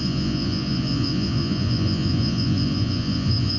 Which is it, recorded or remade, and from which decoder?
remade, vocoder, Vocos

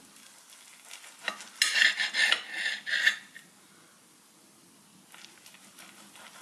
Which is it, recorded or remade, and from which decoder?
recorded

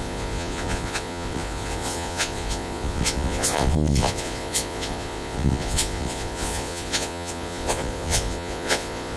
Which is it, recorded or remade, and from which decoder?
remade, vocoder, Vocos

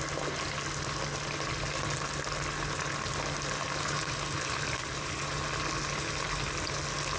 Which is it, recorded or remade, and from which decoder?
recorded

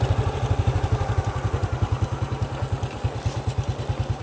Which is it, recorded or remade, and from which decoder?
recorded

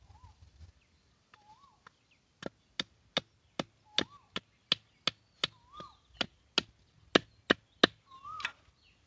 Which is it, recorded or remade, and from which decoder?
recorded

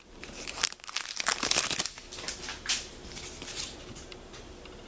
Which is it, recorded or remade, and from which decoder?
recorded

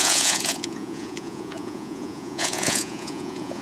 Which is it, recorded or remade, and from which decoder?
remade, vocoder, Vocos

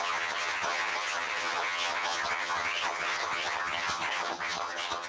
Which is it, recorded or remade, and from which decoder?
remade, vocoder, HiFi-GAN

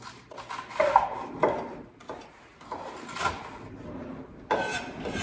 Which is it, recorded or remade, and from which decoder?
recorded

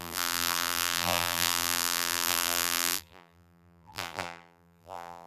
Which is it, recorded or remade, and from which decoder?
remade, vocoder, BigVGAN v2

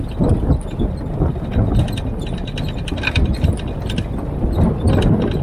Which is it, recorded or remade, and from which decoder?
recorded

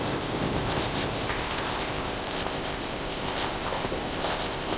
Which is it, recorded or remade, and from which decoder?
remade, codec, ZipCodec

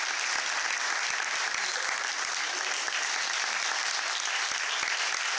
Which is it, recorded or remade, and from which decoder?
recorded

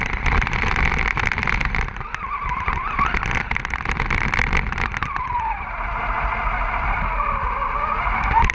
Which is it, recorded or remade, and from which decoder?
recorded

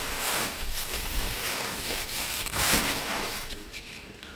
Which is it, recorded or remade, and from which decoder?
remade, codec, DAC